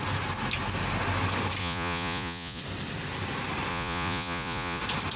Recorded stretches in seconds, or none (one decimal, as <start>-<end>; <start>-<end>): 0.0-1.6; 2.6-3.7; 4.8-5.2